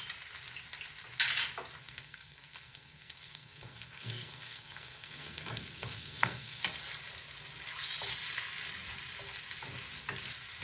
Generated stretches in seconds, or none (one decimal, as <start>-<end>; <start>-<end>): 1.8-6.6